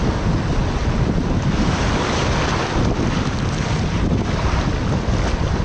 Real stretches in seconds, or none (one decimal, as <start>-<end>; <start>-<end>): 0.0-5.6